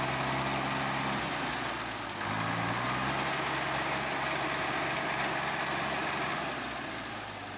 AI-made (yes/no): no